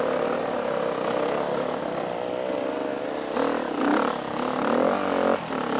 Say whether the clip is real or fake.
real